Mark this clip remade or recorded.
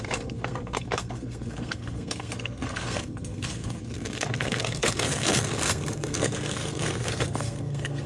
remade